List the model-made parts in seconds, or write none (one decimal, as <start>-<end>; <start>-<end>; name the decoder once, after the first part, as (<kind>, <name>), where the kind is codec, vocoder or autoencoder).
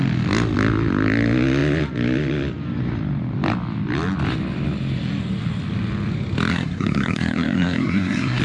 6.5-8.4 (codec, SNAC)